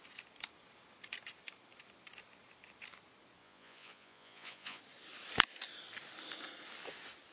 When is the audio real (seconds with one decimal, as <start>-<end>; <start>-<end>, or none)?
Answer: 0.0-3.4; 4.8-7.3

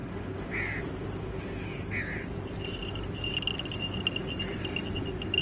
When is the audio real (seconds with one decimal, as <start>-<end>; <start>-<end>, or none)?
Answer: 0.0-5.4

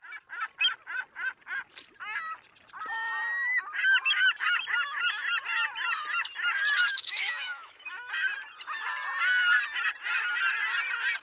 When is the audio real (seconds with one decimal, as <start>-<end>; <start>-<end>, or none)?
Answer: 0.0-6.8; 8.1-11.2

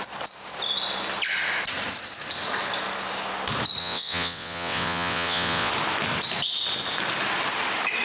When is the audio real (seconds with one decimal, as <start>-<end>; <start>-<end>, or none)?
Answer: 0.0-3.8; 5.7-8.0

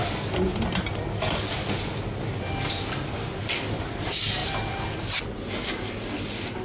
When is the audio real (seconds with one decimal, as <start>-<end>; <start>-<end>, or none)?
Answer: 0.0-6.6

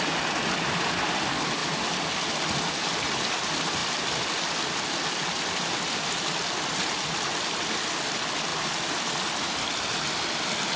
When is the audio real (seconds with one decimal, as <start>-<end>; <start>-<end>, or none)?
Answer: 0.0-10.8

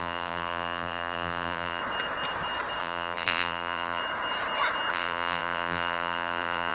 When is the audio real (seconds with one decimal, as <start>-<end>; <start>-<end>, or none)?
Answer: 1.8-2.8; 4.0-4.9